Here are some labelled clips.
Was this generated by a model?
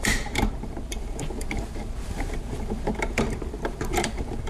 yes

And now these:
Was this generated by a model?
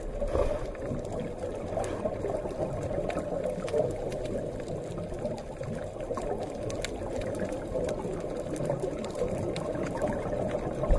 no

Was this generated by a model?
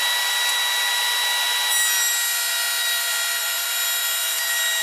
no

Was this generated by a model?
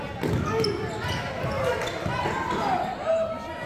no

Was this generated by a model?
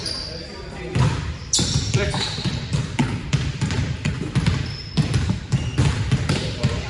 yes